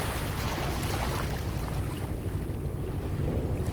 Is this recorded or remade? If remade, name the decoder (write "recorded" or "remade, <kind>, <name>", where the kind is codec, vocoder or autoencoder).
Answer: recorded